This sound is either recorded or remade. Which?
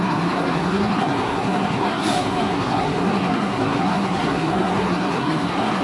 remade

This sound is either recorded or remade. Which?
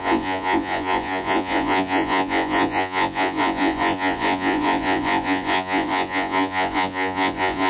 remade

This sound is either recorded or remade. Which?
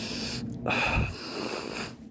recorded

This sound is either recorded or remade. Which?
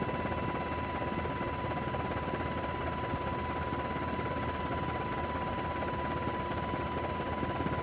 recorded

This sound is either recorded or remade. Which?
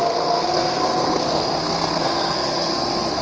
remade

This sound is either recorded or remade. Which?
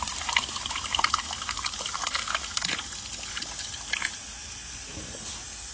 recorded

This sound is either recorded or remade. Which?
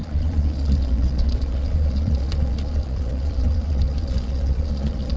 remade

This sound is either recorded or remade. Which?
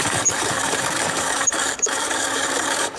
remade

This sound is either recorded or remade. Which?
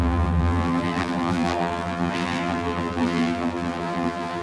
remade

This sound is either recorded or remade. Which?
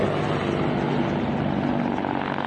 recorded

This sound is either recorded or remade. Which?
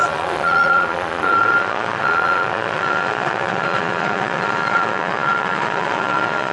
remade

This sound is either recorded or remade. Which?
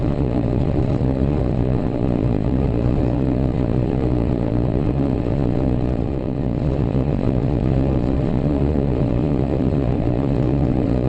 remade